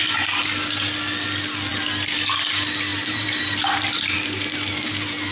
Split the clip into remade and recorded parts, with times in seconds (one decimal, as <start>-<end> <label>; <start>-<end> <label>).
0.0-0.8 remade; 0.8-2.9 recorded; 2.9-5.3 remade